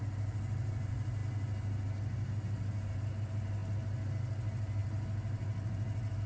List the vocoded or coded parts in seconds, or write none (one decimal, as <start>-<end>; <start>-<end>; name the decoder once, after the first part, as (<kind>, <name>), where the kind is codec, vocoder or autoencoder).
none